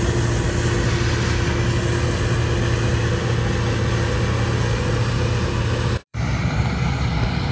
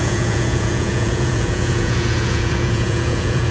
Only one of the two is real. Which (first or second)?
first